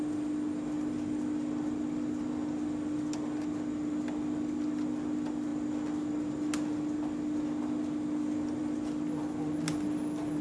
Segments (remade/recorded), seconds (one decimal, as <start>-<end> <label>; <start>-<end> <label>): 0.0-10.4 recorded

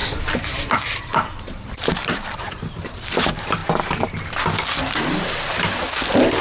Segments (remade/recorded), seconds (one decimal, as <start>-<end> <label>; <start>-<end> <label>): 0.0-3.6 remade; 3.6-6.4 recorded